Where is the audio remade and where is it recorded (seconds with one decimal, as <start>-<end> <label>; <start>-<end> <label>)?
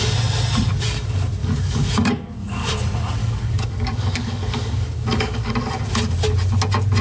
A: 0.0-1.4 recorded; 1.4-2.7 remade; 2.7-3.2 recorded; 3.2-5.5 remade; 5.5-7.0 recorded